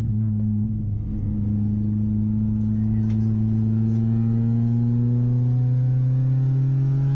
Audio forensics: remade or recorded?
recorded